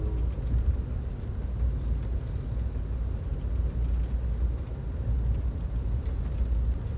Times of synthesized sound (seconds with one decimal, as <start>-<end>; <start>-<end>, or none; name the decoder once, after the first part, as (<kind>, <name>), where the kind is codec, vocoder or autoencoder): none